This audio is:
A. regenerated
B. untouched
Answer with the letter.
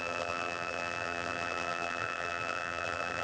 A